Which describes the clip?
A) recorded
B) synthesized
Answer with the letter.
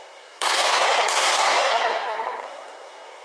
B